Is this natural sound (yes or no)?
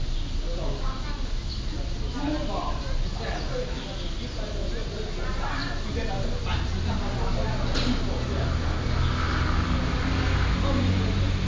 yes